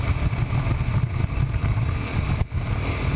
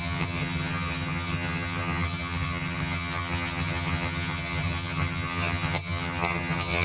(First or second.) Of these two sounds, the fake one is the second